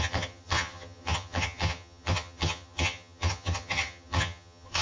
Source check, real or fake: fake